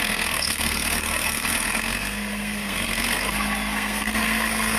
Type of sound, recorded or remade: remade